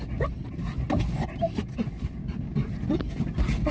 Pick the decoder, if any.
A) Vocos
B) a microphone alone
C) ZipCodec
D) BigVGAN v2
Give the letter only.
B